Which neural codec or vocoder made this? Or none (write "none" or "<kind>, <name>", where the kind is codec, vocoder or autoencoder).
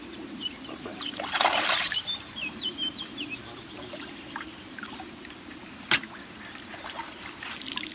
vocoder, BigVGAN v2